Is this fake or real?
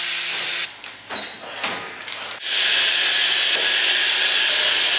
real